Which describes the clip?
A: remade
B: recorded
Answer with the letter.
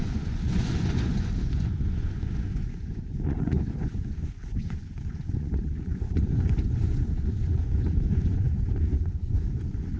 A